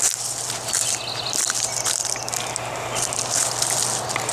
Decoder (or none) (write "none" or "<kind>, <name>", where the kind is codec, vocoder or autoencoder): none